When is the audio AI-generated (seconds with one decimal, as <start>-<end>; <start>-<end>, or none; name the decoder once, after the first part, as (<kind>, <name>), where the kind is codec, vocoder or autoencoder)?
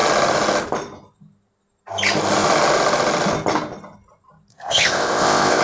4.5-5.6 (codec, ZipCodec)